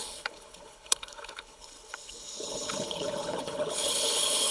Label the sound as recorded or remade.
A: remade